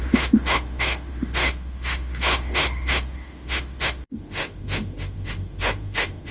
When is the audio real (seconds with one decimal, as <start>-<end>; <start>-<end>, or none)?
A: none